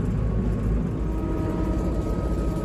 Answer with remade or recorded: recorded